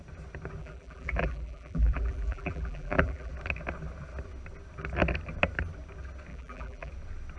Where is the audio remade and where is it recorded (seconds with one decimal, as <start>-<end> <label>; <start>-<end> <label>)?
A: 0.0-0.6 recorded; 0.6-3.3 remade; 3.3-6.3 recorded; 6.3-6.9 remade; 6.9-7.4 recorded